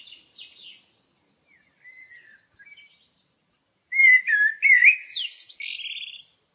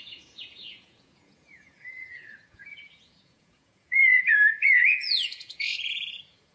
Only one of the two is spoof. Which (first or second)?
second